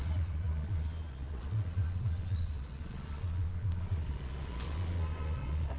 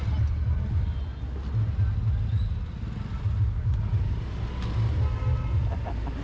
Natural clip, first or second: second